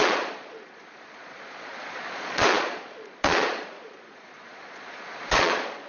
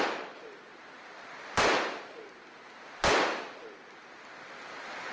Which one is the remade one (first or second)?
first